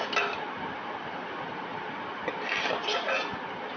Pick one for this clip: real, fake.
real